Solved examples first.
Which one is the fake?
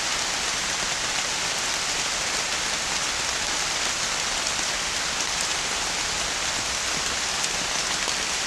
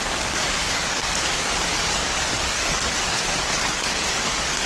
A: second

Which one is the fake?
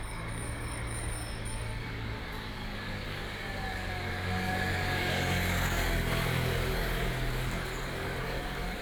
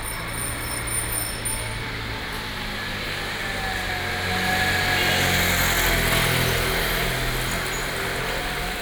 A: first